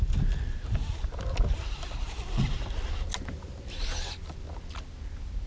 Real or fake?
real